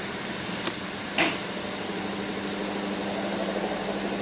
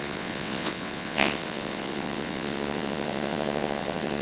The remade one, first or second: second